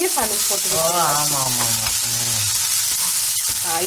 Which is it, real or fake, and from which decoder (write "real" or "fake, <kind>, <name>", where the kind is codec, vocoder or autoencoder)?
real